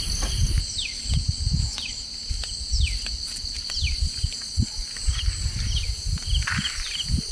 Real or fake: real